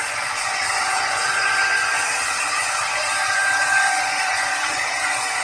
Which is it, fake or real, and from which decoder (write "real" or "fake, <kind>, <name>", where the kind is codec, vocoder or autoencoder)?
fake, vocoder, Vocos